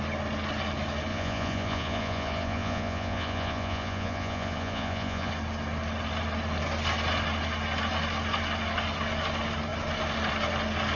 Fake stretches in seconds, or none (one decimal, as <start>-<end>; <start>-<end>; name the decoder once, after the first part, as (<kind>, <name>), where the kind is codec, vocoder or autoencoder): 1.1-5.3 (vocoder, Vocos)